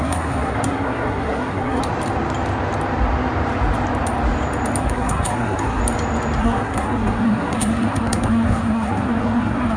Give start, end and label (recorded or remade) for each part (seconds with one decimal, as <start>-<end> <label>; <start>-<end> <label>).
0.0-1.8 remade; 1.8-4.8 recorded; 4.8-5.8 remade; 5.8-6.4 recorded; 6.4-9.8 remade